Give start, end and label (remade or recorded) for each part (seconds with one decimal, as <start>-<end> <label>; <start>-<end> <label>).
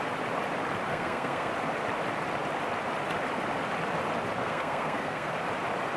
0.0-0.9 recorded; 0.9-1.5 remade; 1.5-4.4 recorded; 4.4-5.3 remade; 5.3-6.0 recorded